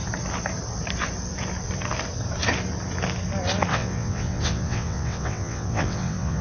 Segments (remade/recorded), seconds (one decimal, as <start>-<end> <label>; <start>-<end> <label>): 0.0-3.7 recorded; 3.7-6.4 remade